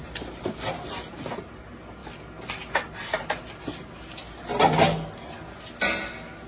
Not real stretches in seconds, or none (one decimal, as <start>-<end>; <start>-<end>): none